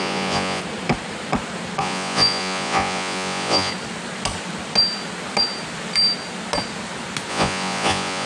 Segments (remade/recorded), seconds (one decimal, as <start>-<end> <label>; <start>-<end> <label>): 0.0-0.6 remade; 0.6-1.8 recorded; 1.8-3.7 remade; 3.7-7.3 recorded; 7.3-8.3 remade